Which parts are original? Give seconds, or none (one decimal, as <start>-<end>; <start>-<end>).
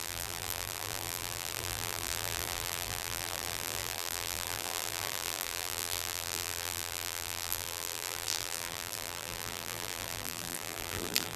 none